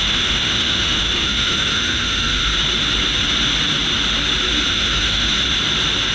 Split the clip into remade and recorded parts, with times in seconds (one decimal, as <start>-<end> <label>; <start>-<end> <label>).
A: 0.0-2.4 remade; 2.4-4.7 recorded; 4.7-5.3 remade; 5.3-6.1 recorded